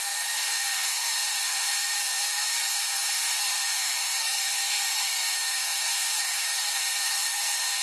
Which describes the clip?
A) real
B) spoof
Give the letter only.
B